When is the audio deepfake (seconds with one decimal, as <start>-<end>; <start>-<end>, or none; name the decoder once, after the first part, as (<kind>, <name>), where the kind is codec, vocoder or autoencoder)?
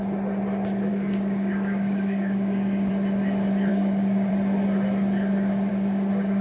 0.9-2.9 (codec, DAC); 3.7-4.3; 5.7-6.4